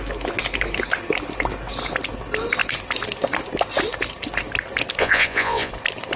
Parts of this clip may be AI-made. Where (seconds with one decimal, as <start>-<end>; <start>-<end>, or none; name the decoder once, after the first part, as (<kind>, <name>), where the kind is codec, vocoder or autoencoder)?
5.0-5.7 (vocoder, Vocos)